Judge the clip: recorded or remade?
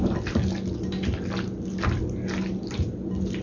recorded